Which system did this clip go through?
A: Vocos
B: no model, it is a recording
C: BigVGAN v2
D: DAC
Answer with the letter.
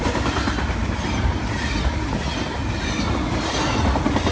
B